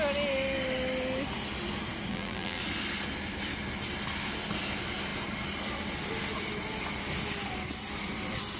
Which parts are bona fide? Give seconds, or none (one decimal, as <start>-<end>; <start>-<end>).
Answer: 0.0-2.1; 2.6-8.6